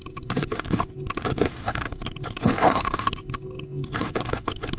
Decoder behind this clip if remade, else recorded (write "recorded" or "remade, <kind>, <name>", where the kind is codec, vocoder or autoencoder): remade, codec, SNAC